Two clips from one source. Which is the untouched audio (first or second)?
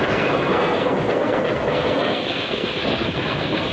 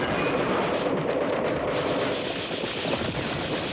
second